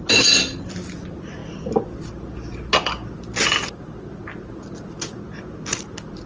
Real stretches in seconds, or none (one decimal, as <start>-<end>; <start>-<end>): 0.0-6.3